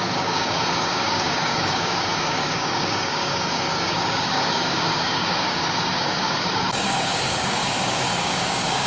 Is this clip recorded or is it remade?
remade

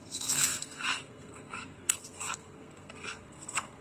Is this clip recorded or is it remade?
remade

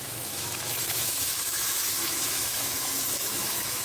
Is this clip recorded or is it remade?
remade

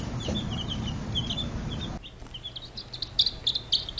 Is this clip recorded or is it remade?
recorded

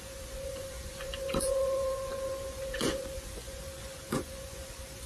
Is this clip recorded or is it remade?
remade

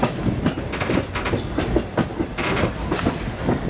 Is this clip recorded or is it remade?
recorded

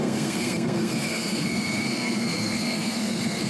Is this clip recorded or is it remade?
remade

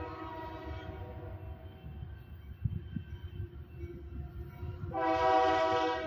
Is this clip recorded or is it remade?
recorded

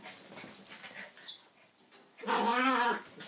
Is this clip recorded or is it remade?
recorded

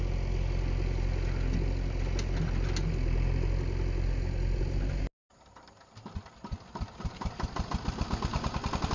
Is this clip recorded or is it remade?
recorded